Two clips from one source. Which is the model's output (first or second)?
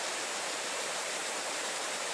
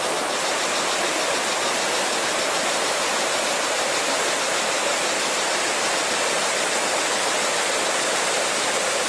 first